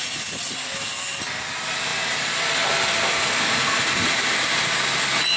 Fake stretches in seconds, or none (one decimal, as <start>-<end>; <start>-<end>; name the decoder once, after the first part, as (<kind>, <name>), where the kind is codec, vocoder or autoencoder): none